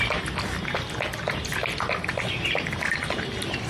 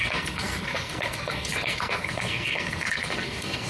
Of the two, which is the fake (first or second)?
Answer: second